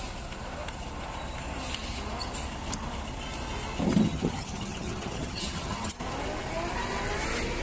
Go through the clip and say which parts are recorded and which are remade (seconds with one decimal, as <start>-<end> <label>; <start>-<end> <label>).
0.0-4.1 recorded; 4.1-5.9 remade; 5.9-7.6 recorded